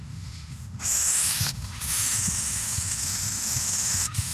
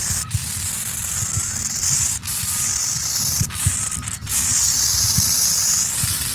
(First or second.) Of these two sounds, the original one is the second